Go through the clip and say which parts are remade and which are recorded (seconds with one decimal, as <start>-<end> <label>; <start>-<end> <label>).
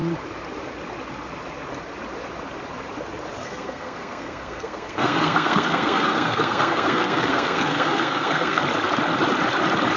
0.0-3.4 recorded; 3.4-8.6 remade; 8.6-10.0 recorded